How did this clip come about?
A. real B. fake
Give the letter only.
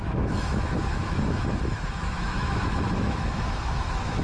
B